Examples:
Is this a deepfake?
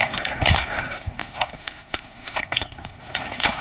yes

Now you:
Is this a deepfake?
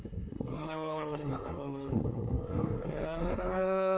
yes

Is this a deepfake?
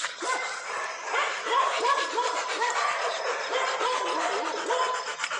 no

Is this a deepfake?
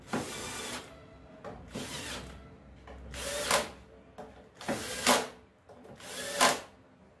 no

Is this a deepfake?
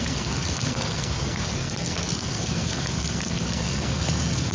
yes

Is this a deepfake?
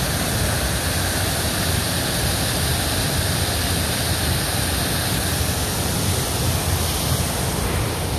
no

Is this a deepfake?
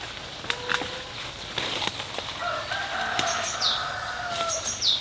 no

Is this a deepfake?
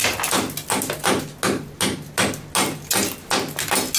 no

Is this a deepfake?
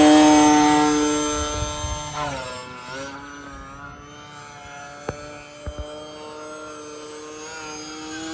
no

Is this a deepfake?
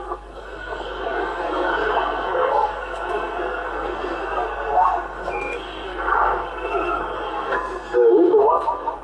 yes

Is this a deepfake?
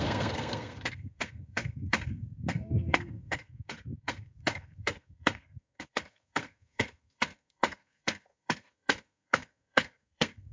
yes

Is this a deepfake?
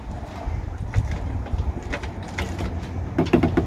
no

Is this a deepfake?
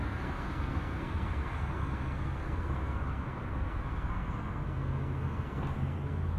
yes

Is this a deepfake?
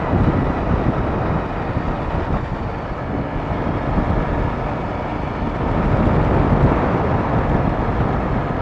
no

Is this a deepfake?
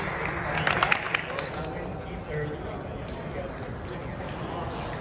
no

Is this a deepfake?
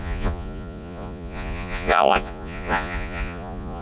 yes